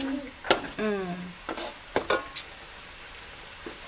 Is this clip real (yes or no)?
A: yes